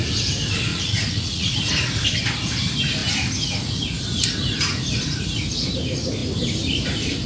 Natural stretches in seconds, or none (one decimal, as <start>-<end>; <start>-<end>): 0.0-0.7; 1.7-7.3